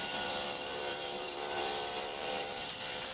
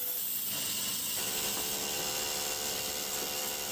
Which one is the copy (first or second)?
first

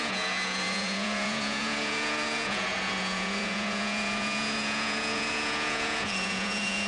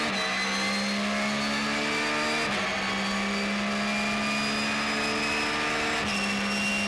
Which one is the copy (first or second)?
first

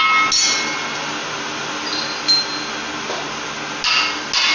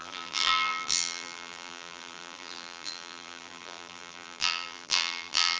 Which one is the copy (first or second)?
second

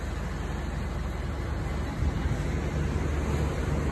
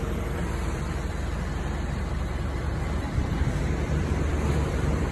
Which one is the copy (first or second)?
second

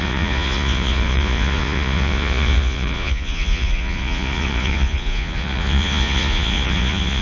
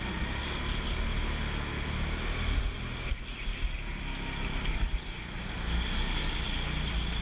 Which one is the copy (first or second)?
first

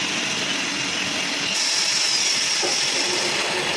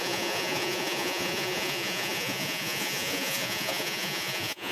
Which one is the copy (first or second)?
second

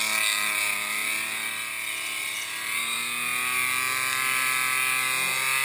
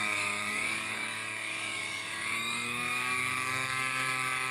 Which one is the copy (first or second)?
second